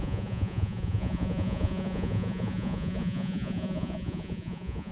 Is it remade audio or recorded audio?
remade